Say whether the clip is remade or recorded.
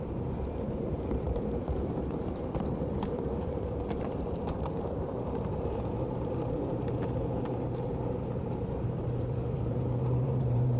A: remade